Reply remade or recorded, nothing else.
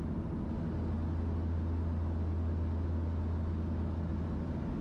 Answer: recorded